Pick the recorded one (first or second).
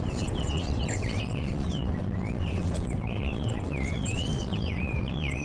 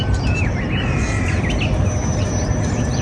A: second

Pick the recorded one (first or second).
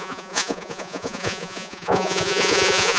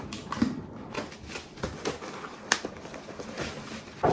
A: second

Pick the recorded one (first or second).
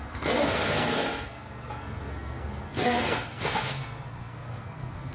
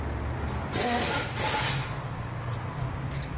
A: second